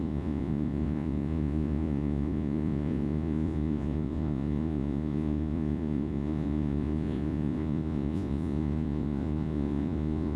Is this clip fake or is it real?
fake